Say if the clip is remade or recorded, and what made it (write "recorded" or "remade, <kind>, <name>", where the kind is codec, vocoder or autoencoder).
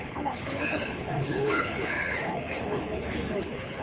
remade, codec, HILCodec